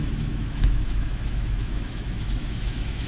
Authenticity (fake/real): fake